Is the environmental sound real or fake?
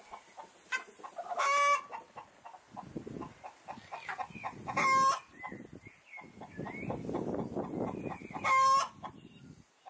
real